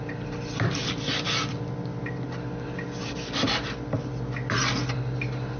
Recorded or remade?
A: recorded